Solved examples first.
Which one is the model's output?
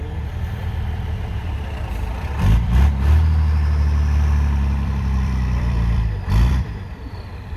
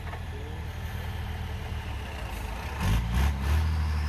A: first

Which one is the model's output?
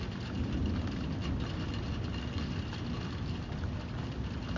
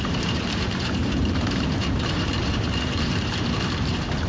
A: second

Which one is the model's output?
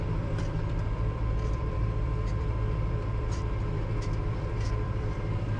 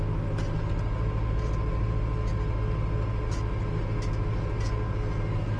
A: first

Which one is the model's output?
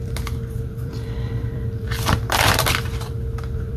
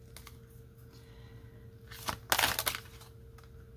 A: first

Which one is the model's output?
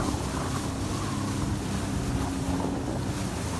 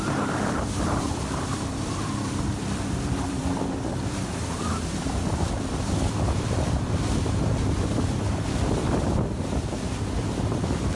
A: second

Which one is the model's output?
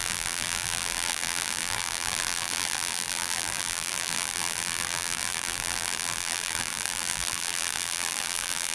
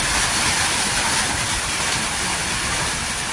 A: first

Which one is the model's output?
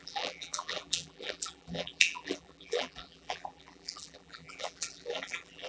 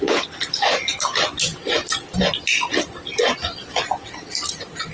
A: first